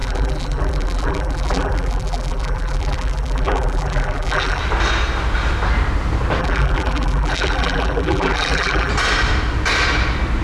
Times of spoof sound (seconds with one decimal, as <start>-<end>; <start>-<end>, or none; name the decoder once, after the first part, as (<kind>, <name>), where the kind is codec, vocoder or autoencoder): 0.0-4.6 (vocoder, BigVGAN v2); 6.4-8.9